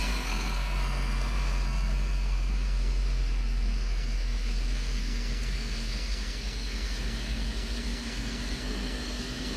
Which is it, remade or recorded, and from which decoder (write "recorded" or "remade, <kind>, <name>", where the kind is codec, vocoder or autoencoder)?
remade, codec, SNAC